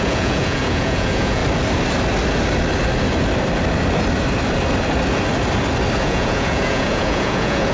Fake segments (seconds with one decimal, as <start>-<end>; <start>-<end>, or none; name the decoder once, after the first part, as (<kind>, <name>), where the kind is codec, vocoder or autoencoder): 0.0-1.4 (vocoder, Vocos); 6.0-7.7